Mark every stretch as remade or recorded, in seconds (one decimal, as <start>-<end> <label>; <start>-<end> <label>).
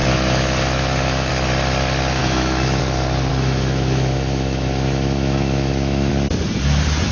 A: 0.0-1.3 remade; 1.3-2.2 recorded; 2.2-2.8 remade; 2.8-3.3 recorded; 3.3-6.1 remade; 6.1-7.1 recorded